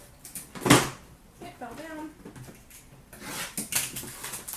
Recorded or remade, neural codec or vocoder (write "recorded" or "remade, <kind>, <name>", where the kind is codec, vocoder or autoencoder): recorded